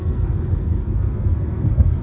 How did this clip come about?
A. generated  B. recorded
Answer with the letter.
A